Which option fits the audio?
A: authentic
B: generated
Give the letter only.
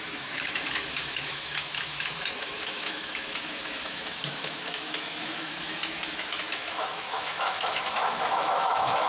B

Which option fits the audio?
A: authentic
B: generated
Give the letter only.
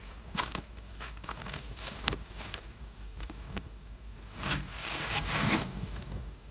B